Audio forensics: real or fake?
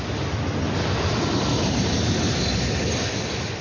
real